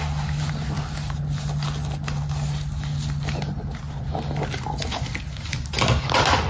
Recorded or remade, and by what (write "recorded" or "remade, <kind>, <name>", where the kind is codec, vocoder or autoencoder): recorded